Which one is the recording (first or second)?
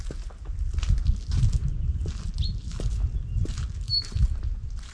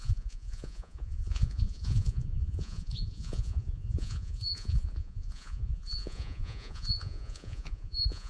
first